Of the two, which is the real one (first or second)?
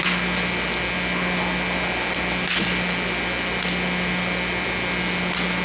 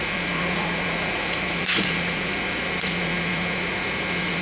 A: first